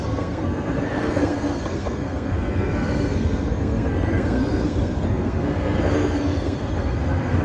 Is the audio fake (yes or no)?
yes